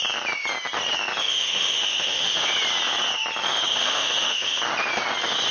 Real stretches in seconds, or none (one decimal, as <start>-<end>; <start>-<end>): 0.0-1.2; 2.5-3.7; 4.6-5.5